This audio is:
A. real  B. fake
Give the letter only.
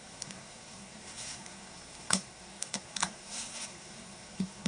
B